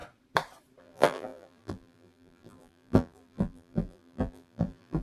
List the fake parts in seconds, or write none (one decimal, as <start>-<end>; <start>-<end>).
0.8-5.0